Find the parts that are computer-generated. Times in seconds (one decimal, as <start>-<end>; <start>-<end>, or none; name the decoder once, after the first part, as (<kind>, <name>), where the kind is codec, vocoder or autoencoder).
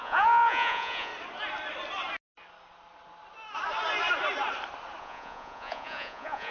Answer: 0.0-1.1 (vocoder, Vocos); 5.0-6.5